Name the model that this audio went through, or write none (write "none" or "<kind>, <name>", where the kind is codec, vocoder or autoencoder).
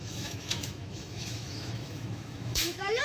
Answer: autoencoder, DAC-VAE